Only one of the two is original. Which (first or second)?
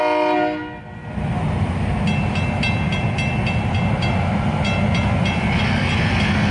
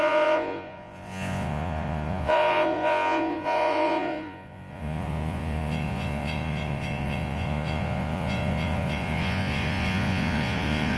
first